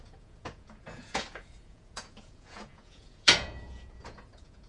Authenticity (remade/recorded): remade